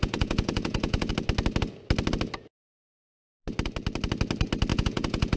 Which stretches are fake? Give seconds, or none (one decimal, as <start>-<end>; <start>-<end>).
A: 0.0-1.1; 4.7-5.4